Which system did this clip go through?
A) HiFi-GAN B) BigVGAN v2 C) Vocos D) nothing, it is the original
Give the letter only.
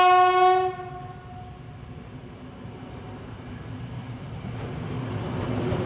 D